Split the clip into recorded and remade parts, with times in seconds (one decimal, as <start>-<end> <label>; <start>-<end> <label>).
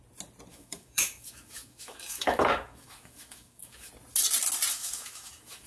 0.0-0.5 recorded; 0.5-3.9 remade; 3.9-4.7 recorded; 4.7-5.7 remade